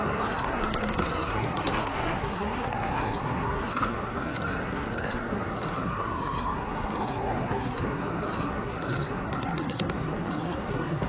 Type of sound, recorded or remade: remade